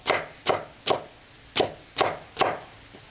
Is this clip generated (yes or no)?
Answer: no